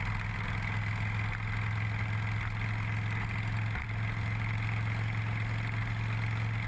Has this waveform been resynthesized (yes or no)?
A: no